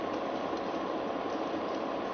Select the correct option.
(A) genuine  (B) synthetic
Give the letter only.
A